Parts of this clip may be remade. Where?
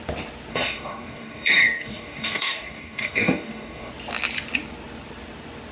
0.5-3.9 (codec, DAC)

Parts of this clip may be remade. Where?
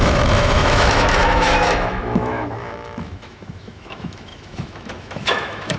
0.0-5.8 (autoencoder, DAC-VAE)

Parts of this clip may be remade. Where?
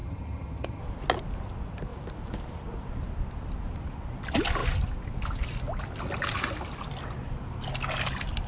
0.0-0.8 (vocoder, HiFi-GAN)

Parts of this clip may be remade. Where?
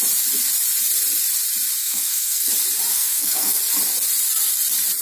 1.8-2.5 (codec, SNAC); 2.9-3.6